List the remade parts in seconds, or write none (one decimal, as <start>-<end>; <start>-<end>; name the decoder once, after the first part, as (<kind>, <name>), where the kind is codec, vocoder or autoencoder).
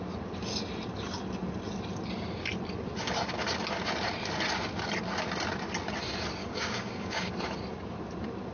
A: 6.4-7.3 (codec, DAC)